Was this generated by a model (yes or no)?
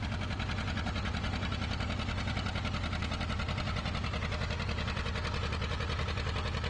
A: no